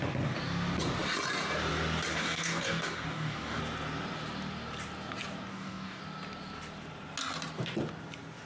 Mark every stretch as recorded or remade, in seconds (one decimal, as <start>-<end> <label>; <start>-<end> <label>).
0.0-2.1 recorded; 2.1-3.6 remade; 3.6-5.5 recorded; 5.5-6.0 remade; 6.0-8.5 recorded